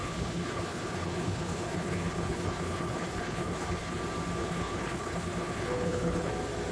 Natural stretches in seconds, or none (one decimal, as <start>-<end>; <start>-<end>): 4.0-4.4; 6.3-6.7